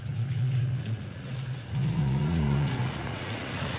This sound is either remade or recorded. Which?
remade